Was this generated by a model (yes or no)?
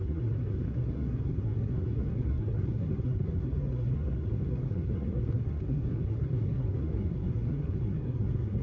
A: yes